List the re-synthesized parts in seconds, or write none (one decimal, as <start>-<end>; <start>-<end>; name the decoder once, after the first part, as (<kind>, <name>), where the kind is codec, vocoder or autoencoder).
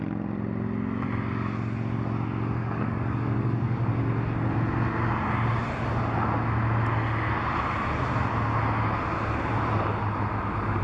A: 2.6-3.9 (codec, DAC)